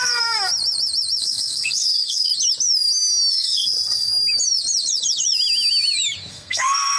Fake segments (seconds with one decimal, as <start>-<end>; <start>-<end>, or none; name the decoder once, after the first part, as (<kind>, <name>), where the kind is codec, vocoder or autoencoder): 0.0-0.5 (codec, SNAC); 1.2-2.3; 3.3-4.1; 6.3-7.0